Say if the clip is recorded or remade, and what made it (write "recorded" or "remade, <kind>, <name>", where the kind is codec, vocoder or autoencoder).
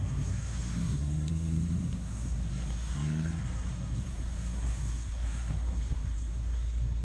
remade, codec, SNAC